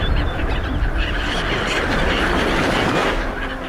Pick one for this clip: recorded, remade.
recorded